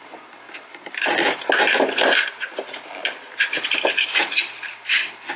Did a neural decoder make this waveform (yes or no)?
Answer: no